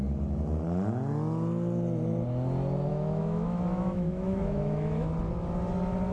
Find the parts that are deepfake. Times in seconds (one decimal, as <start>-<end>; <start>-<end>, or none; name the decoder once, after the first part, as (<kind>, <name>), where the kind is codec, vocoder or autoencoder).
2.9-5.1 (autoencoder, DAC-VAE)